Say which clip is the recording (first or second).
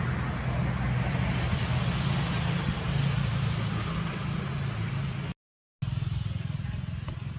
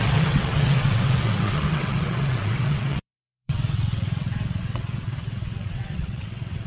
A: first